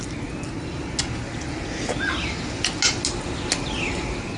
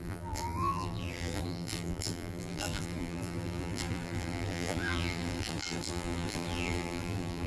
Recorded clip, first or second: first